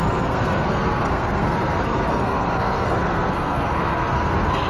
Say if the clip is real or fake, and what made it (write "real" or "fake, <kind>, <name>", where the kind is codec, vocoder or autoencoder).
fake, codec, SNAC